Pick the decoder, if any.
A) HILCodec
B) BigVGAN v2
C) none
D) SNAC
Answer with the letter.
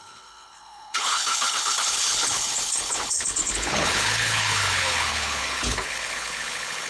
A